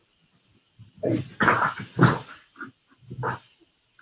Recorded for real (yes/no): yes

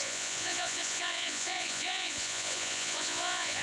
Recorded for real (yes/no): no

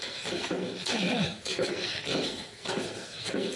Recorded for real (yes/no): no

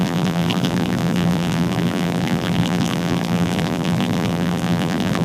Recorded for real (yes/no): no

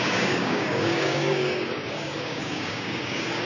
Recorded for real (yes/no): no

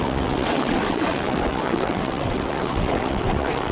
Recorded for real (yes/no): no